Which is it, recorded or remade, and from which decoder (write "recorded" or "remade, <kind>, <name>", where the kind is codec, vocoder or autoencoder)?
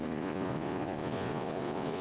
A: remade, vocoder, Vocos